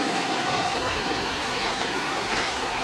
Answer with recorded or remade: remade